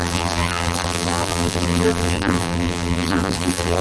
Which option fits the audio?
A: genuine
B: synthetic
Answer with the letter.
B